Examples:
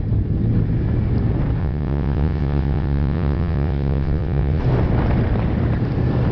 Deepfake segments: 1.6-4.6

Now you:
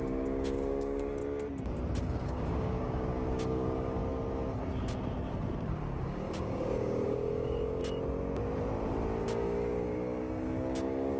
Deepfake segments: 0.0-1.2; 2.0-4.0; 6.0-7.8; 9.2-11.2

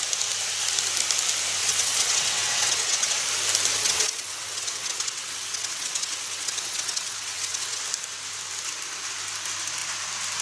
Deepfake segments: 1.6-3.2; 3.7-7.8

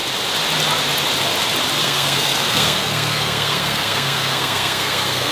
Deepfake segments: 1.8-5.3

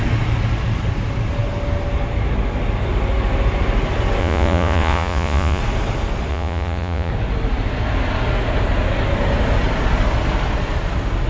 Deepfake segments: 4.2-5.6; 6.3-7.1

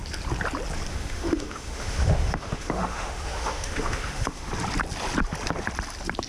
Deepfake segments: 0.9-4.5

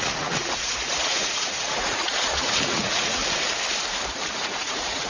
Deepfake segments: 0.0-3.2; 4.3-5.1